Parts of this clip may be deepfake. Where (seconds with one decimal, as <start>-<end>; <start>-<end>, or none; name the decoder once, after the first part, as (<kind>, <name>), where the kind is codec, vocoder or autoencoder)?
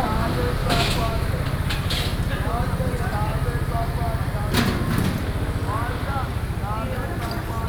0.6-1.3 (autoencoder, DAC-VAE)